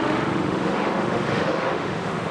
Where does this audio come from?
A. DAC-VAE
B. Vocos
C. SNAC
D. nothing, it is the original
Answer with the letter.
A